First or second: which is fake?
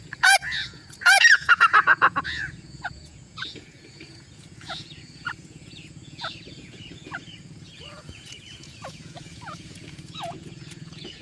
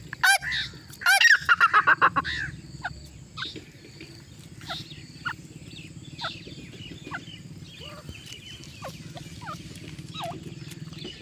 first